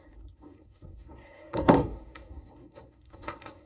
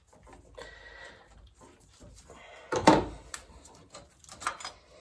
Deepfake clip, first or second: first